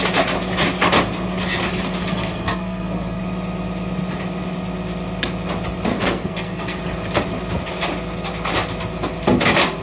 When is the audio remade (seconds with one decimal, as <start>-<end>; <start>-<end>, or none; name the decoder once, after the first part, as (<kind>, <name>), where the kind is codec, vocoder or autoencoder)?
2.0-3.2 (codec, SNAC); 5.9-6.8